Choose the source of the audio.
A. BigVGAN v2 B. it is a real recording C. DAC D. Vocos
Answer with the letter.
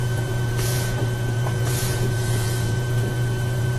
D